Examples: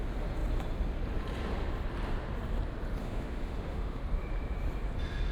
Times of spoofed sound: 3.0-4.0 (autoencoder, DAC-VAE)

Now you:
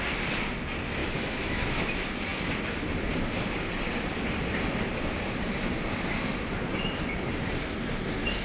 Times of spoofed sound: 1.0-1.8 (autoencoder, DAC-VAE)

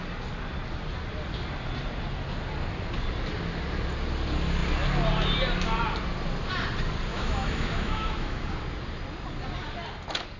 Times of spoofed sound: 7.1-8.5 (autoencoder, DAC-VAE)

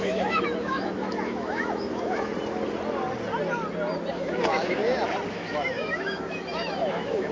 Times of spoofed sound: 0.0-2.3 (autoencoder, DAC-VAE); 4.1-4.8; 5.3-7.3

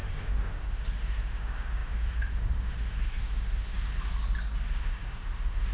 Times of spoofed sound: 0.0-4.1 (autoencoder, DAC-VAE); 4.7-5.7

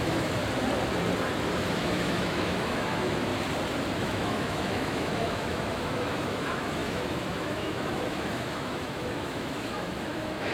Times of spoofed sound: 0.0-0.4 (autoencoder, DAC-VAE); 1.7-3.3; 4.0-10.5